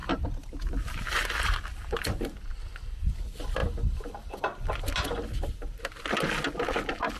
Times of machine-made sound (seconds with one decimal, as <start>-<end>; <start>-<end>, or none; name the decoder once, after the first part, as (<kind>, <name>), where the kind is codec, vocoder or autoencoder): 0.0-2.2 (vocoder, BigVGAN v2)